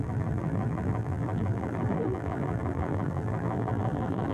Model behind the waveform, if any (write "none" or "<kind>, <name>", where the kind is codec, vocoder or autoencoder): vocoder, BigVGAN v2